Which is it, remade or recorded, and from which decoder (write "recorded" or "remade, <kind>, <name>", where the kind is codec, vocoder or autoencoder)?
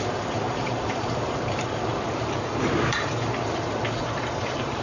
remade, vocoder, BigVGAN v2